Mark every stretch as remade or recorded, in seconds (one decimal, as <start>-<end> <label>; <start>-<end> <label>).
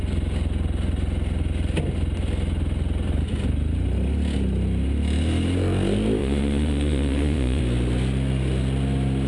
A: 0.0-6.2 recorded; 6.2-7.6 remade; 7.6-9.3 recorded